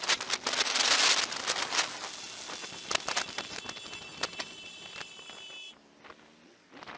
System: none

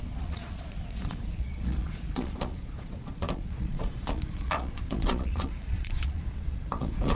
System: vocoder, Vocos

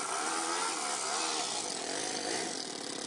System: none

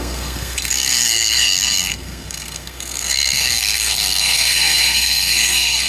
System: codec, SNAC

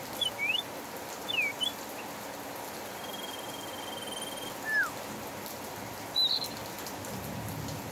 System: none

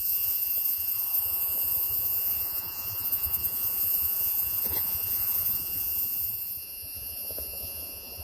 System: vocoder, Vocos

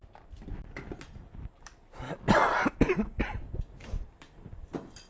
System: none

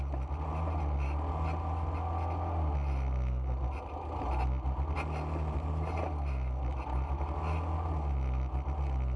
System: none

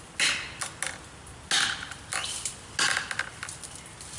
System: none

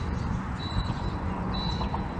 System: vocoder, Vocos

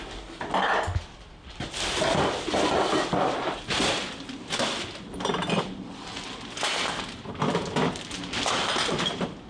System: none